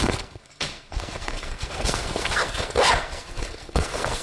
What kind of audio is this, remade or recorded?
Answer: remade